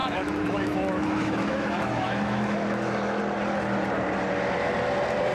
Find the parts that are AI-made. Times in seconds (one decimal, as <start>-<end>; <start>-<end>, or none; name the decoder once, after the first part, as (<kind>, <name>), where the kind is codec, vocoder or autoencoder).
0.0-3.2 (autoencoder, DAC-VAE)